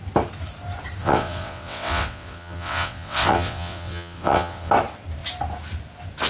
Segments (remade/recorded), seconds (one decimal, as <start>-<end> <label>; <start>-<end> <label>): 0.0-1.0 recorded; 1.0-4.7 remade; 4.7-6.3 recorded